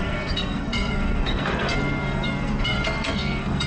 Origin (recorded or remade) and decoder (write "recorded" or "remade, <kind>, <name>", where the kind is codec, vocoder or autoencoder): remade, codec, SNAC